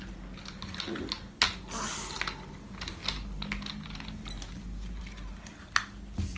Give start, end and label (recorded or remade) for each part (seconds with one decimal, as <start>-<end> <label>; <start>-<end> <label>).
0.0-6.4 recorded